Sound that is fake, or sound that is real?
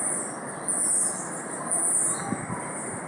real